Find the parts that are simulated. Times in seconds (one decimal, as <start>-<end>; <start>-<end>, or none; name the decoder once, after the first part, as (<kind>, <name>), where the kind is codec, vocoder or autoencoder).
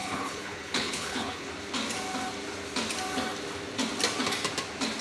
0.0-1.5 (codec, HILCodec)